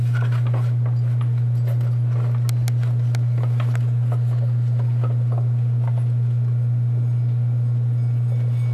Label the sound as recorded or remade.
recorded